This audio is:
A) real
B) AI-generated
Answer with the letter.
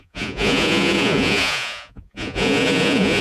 B